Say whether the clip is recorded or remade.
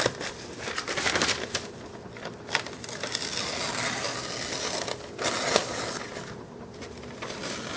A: recorded